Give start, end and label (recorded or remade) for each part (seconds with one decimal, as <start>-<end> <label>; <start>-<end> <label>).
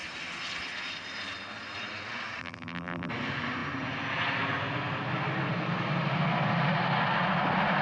0.0-2.4 recorded; 2.4-3.1 remade; 3.1-7.8 recorded